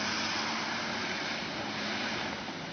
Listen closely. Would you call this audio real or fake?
real